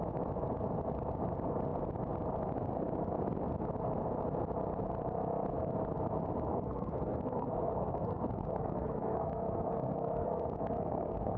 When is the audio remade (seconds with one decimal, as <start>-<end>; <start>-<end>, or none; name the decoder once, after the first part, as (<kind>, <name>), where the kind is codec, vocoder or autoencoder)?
6.5-11.4 (codec, SNAC)